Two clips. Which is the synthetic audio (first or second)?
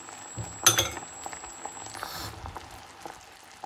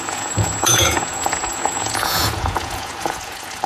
second